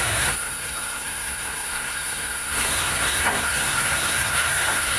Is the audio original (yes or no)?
no